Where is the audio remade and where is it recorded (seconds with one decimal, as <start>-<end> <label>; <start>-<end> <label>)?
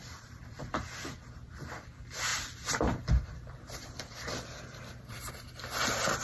0.0-0.7 remade; 0.7-2.3 recorded; 2.3-5.3 remade; 5.3-6.2 recorded